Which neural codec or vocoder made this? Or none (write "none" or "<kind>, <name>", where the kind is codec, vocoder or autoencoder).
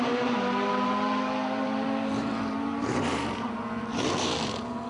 vocoder, BigVGAN v2